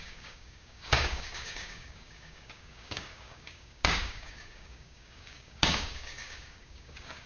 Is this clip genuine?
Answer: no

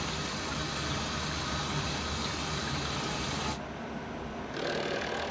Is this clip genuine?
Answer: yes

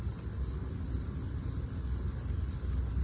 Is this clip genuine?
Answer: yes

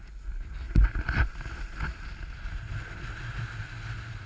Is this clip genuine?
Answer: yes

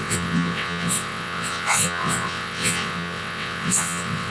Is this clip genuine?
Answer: no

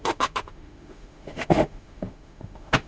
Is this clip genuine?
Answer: no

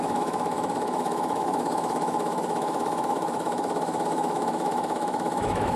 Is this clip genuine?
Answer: no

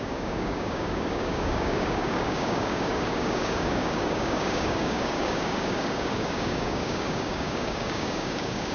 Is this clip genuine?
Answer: no